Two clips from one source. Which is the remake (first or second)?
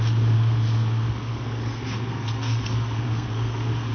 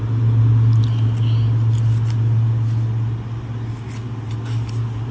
first